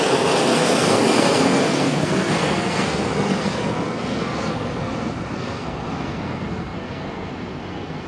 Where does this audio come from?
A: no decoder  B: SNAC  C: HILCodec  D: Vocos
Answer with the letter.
B